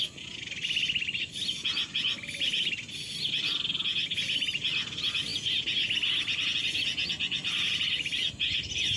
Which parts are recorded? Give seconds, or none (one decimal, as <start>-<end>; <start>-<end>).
0.0-9.0

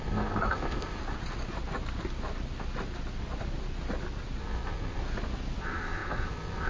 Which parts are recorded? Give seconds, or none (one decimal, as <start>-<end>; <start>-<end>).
1.0-4.4; 5.0-5.6

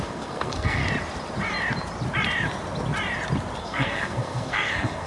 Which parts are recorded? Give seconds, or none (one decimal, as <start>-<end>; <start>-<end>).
0.8-3.6